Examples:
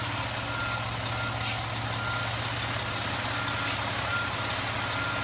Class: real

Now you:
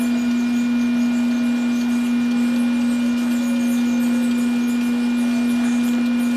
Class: real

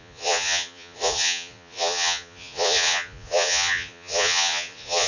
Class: fake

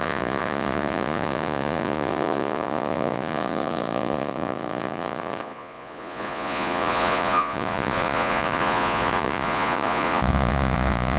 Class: fake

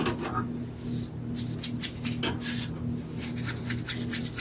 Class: real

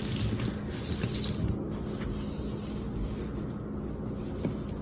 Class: real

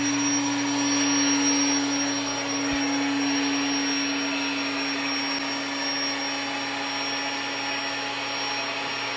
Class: real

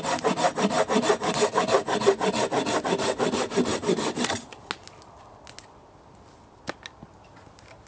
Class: real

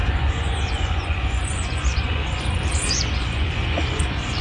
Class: fake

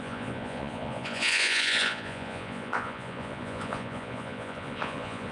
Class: fake